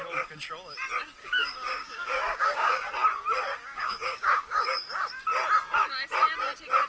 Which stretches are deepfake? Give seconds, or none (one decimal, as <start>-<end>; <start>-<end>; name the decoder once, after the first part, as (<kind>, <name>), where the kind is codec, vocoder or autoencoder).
1.2-2.9 (codec, DAC); 3.5-5.1